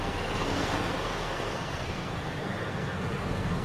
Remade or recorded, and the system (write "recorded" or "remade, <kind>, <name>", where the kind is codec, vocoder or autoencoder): remade, codec, SNAC